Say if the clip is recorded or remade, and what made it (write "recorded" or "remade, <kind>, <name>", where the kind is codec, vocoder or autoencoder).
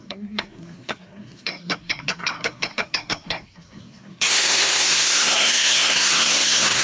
remade, codec, SNAC